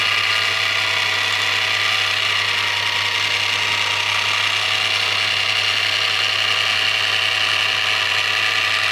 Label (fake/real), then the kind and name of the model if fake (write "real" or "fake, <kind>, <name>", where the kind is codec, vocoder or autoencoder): real